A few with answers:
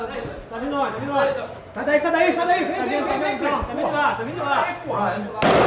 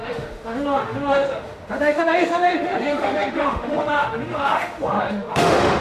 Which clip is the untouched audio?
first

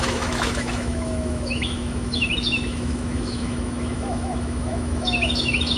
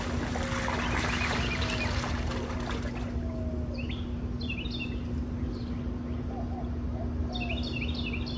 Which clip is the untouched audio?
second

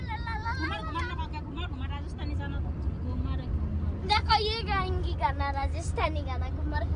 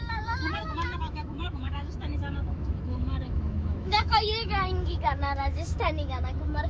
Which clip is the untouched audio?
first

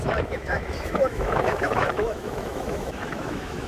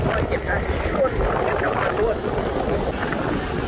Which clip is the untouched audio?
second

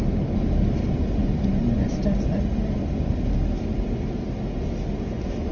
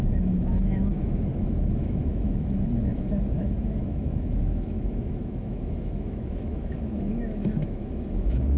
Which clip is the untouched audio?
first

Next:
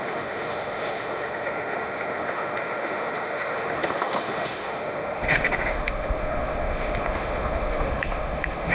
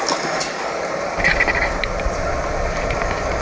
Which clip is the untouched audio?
second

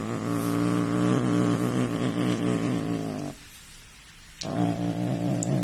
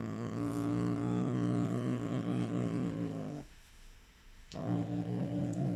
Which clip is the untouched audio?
first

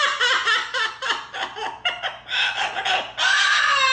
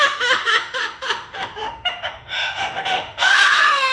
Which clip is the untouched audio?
first